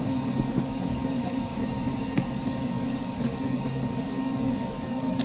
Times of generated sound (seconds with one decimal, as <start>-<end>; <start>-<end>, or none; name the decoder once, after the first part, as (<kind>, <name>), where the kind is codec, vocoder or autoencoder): 0.0-1.6 (codec, DAC); 2.4-5.2